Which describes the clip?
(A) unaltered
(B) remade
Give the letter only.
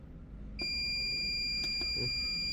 A